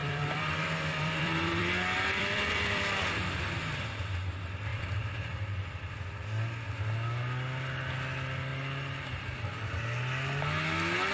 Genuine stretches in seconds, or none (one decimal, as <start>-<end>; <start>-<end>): 3.3-4.7; 5.9-11.1